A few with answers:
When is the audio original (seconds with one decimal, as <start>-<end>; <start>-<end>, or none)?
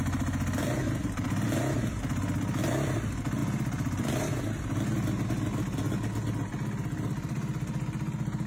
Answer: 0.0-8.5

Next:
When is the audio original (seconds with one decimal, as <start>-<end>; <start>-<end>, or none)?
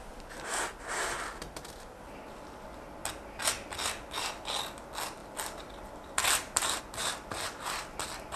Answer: 0.0-5.2; 6.8-8.4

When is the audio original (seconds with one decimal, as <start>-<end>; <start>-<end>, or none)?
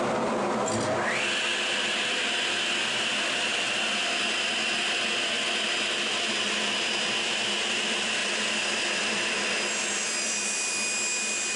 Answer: 0.0-11.6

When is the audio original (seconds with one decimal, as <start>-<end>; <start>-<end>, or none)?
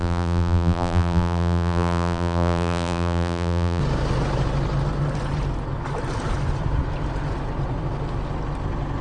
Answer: 3.8-9.0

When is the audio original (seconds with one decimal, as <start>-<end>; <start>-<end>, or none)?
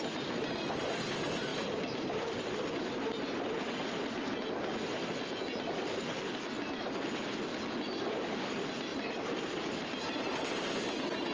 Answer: 0.0-11.3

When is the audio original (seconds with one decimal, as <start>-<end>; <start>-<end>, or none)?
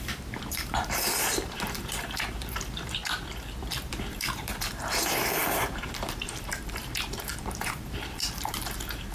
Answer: 3.0-3.9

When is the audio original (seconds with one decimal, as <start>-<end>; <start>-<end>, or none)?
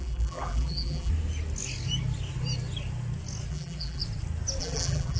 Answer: 1.1-3.5; 4.0-4.6